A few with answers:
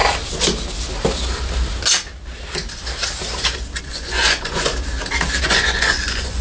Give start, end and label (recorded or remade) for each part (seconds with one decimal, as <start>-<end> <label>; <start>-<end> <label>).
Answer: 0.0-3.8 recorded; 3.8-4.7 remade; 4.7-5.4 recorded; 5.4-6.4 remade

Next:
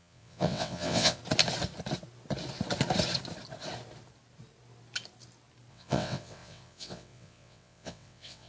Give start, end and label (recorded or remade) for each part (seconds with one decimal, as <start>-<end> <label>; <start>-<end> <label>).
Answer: 0.0-1.2 remade; 1.2-5.7 recorded; 5.7-8.5 remade

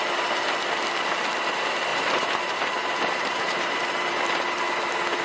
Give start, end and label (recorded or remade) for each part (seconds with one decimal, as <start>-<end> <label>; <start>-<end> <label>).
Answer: 0.0-1.9 recorded; 1.9-4.6 remade; 4.6-5.2 recorded

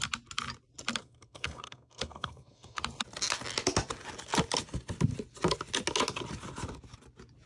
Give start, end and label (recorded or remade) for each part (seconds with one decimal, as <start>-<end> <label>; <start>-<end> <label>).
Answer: 0.0-1.0 recorded; 1.0-2.8 remade; 2.8-7.5 recorded

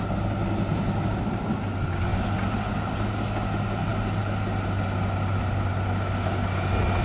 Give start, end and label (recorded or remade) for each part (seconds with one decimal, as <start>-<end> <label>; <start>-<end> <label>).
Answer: 0.0-7.0 recorded

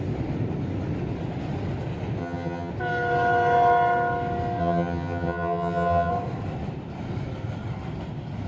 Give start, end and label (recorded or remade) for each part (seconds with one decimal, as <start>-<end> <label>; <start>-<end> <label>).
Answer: 0.0-2.2 recorded; 2.2-2.7 remade; 2.7-4.6 recorded; 4.6-6.1 remade; 6.1-8.5 recorded